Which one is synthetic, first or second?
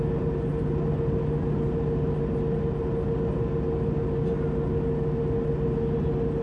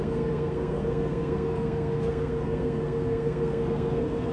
second